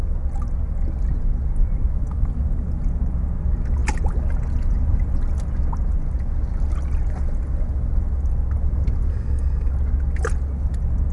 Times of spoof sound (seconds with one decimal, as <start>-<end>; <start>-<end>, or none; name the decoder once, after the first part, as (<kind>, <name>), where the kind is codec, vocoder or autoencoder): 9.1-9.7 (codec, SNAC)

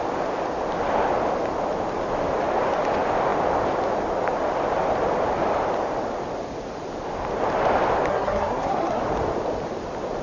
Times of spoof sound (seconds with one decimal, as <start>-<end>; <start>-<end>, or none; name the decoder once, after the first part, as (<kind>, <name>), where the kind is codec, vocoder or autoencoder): 8.1-9.0 (codec, SNAC)

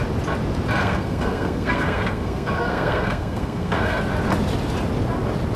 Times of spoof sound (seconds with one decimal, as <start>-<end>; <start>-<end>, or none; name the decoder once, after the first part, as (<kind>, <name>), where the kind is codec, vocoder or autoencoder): 0.8-4.0 (codec, SNAC)